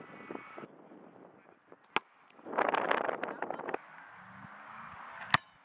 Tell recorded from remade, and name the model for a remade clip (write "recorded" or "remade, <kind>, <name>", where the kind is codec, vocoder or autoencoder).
recorded